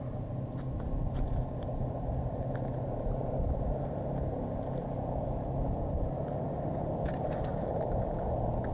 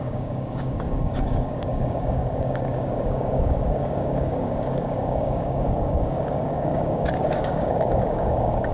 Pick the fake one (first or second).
second